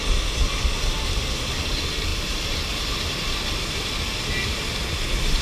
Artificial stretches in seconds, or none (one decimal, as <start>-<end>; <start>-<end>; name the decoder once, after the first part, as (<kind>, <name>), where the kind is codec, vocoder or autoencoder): none

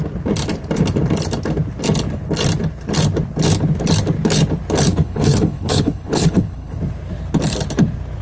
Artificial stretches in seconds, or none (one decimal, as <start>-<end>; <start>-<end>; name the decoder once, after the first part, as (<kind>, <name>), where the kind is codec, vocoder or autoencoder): 4.9-6.8 (codec, HILCodec)

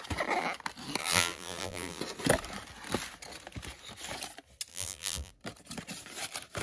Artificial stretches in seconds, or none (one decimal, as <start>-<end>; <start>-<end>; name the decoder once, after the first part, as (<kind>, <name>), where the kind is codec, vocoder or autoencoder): 1.0-2.0 (vocoder, BigVGAN v2); 4.7-5.3